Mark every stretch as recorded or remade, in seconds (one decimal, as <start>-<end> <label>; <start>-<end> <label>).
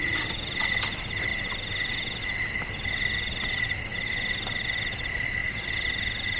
0.0-6.4 recorded